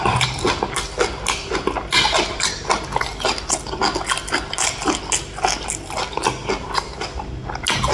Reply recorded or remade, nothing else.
recorded